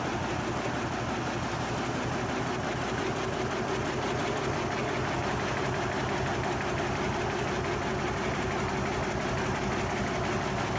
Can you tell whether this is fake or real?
real